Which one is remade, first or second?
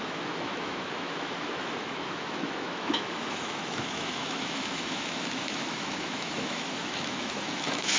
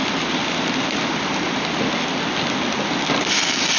first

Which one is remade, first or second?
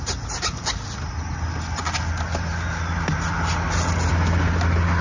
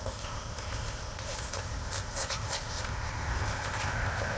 second